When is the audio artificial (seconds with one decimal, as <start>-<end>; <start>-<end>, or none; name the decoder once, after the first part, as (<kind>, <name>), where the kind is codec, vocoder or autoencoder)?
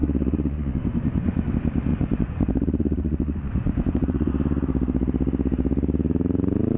0.0-1.5 (vocoder, Vocos); 1.9-4.3